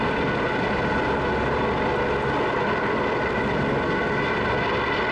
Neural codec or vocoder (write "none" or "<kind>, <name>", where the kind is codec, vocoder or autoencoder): none